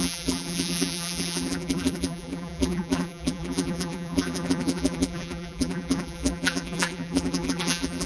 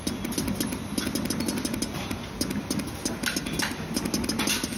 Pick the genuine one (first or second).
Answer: second